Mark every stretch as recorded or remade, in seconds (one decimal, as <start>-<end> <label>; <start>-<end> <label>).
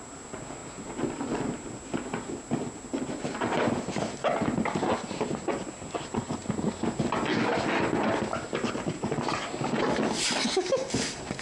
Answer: 0.0-11.4 recorded